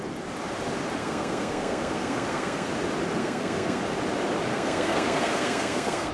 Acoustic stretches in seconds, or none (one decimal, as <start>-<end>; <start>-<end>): 0.0-1.0; 2.7-3.2; 3.8-4.5